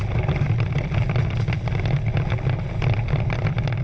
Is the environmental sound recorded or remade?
recorded